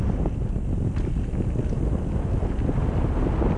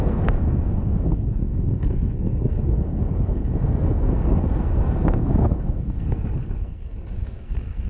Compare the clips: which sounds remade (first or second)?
second